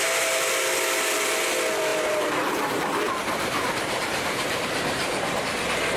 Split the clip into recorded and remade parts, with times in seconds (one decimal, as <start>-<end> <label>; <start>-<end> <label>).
0.0-1.9 recorded; 1.9-5.4 remade; 5.4-6.0 recorded